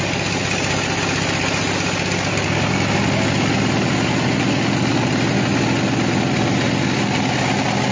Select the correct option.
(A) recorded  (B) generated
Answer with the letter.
A